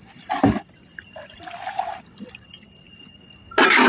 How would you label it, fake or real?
real